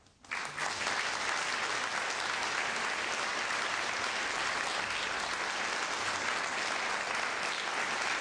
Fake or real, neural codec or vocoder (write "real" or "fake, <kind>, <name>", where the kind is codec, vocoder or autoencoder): real